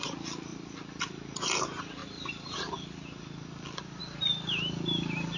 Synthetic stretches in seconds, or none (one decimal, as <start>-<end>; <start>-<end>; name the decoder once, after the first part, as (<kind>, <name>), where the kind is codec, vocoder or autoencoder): none